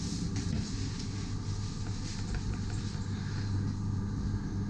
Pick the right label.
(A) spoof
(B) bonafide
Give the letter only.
B